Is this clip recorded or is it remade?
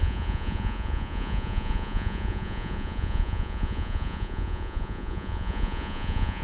remade